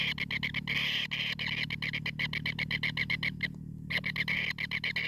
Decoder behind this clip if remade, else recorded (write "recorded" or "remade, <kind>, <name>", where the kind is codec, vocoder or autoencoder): recorded